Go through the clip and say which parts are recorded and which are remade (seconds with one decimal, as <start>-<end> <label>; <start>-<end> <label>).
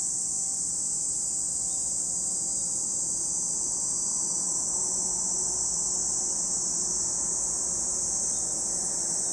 0.0-9.3 recorded